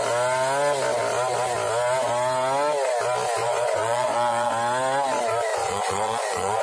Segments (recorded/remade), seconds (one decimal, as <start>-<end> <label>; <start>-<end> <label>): 0.0-3.4 recorded; 3.4-4.5 remade; 4.5-5.5 recorded; 5.5-6.6 remade